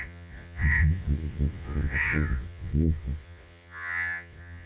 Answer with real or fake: fake